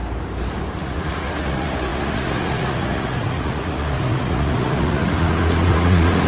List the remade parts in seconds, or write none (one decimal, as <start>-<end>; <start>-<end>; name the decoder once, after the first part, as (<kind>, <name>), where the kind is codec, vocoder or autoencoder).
0.8-6.3 (vocoder, Vocos)